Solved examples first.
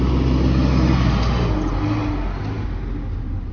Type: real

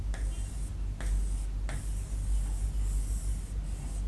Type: real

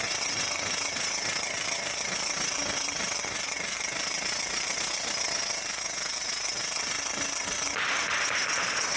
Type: real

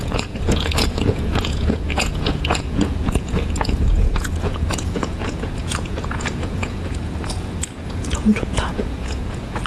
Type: fake